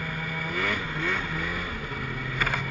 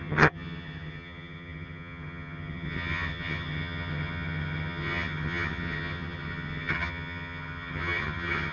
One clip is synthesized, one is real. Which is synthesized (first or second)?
second